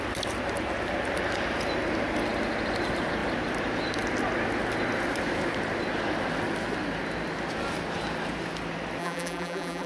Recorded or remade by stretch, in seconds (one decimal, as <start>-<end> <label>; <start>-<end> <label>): 0.0-9.0 recorded; 9.0-9.9 remade